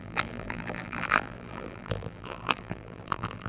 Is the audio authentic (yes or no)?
no